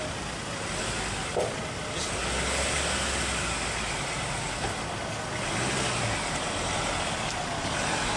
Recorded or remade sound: recorded